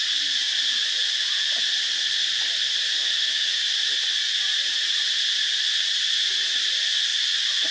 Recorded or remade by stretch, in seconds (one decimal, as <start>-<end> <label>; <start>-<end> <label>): 0.0-3.0 recorded; 3.0-3.6 remade; 3.6-7.7 recorded